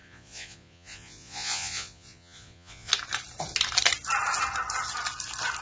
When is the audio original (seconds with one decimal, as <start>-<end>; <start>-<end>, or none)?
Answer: 2.9-5.6